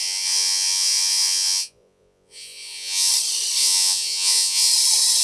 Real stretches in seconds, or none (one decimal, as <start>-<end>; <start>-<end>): 3.1-3.6; 4.7-5.2